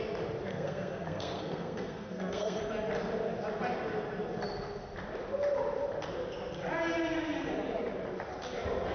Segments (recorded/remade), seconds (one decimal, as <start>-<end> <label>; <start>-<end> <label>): 0.0-0.5 recorded; 0.5-2.6 remade; 2.6-8.9 recorded